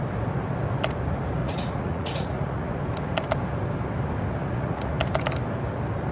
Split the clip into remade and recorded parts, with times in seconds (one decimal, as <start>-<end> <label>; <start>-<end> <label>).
0.0-1.4 recorded; 1.4-2.8 remade; 2.8-4.4 recorded; 4.4-4.9 remade; 4.9-6.1 recorded